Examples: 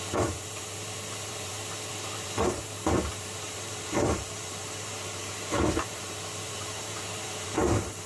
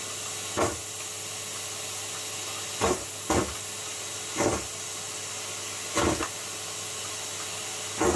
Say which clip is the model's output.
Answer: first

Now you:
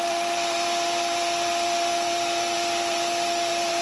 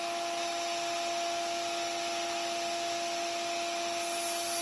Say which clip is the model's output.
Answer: first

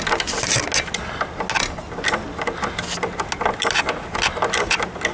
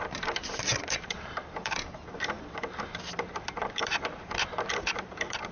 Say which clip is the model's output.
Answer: second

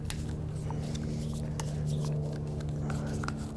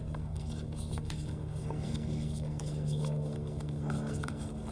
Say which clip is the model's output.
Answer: second